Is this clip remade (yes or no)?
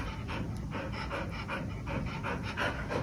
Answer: no